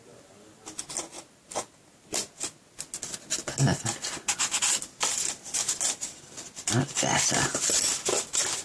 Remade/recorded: recorded